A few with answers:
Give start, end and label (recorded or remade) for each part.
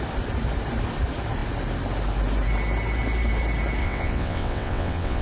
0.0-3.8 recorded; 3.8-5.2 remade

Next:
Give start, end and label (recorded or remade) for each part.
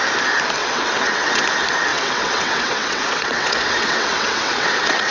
0.0-0.6 recorded; 0.6-1.4 remade; 1.4-1.9 recorded; 1.9-5.1 remade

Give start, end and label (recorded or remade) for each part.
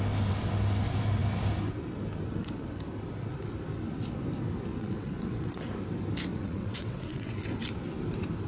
0.0-4.7 recorded; 4.7-5.6 remade; 5.6-6.3 recorded; 6.3-7.4 remade; 7.4-8.5 recorded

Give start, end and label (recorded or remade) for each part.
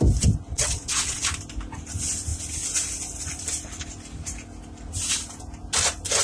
0.0-0.5 recorded; 0.5-1.2 remade; 1.2-6.2 recorded